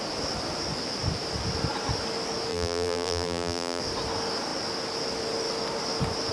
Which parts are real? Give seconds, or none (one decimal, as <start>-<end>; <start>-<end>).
0.0-2.5; 3.8-6.3